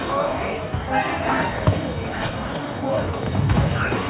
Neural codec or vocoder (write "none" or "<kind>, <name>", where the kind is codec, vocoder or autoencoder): codec, DAC